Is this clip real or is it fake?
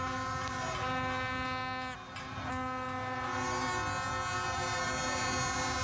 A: real